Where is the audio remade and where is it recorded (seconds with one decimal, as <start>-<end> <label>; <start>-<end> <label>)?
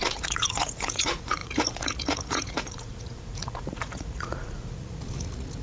0.0-5.6 remade